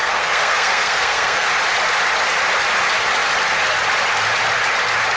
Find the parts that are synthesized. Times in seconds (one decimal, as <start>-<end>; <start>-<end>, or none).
0.0-1.5